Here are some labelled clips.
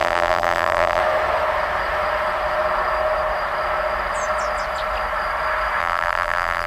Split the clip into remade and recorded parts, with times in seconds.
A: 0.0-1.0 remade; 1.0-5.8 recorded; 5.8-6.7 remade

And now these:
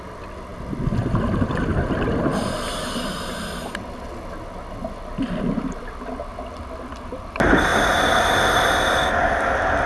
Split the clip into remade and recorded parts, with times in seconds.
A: 0.0-2.3 remade; 2.3-5.4 recorded; 5.4-6.3 remade; 6.3-7.0 recorded; 7.0-7.7 remade; 7.7-9.9 recorded

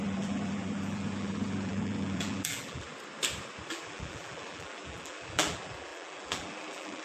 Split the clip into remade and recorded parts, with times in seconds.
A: 0.0-2.9 remade; 2.9-3.7 recorded; 3.7-7.0 remade

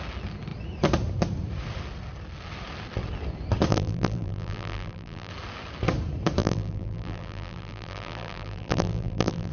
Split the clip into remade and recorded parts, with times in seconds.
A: 0.0-3.7 recorded; 3.7-5.3 remade; 5.3-6.4 recorded; 6.4-9.5 remade

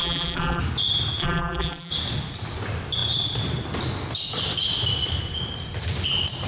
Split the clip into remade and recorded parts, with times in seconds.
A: 0.0-0.6 remade; 0.6-1.2 recorded; 1.2-1.9 remade; 1.9-6.5 recorded

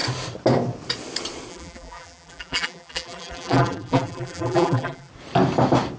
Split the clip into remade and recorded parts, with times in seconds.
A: 0.0-1.5 recorded; 1.5-5.1 remade; 5.1-6.0 recorded

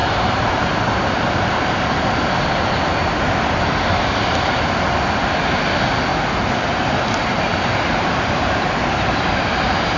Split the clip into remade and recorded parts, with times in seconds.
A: 0.0-0.7 remade; 0.7-6.1 recorded; 6.1-8.9 remade; 8.9-10.0 recorded